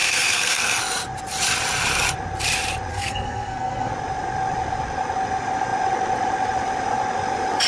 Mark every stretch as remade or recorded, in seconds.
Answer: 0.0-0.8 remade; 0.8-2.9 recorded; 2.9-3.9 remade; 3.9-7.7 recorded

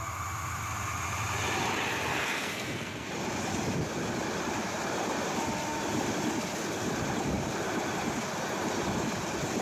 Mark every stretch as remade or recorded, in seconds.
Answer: 0.0-2.1 recorded; 2.1-3.1 remade; 3.1-9.6 recorded

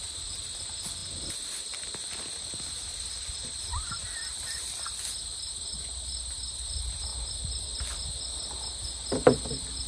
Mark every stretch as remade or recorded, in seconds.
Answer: 0.0-9.9 recorded

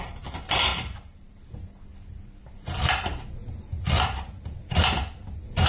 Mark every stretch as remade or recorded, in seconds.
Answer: 0.0-5.7 recorded

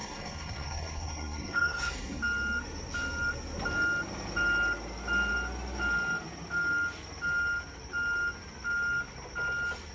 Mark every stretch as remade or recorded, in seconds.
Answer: 0.0-2.2 remade; 2.2-9.9 recorded

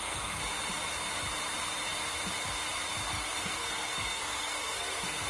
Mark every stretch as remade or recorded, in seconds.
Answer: 0.0-0.4 remade; 0.4-3.1 recorded; 3.1-5.3 remade

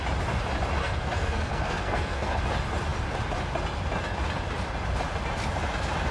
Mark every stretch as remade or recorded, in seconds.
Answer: 0.0-0.8 recorded; 0.8-2.4 remade; 2.4-6.1 recorded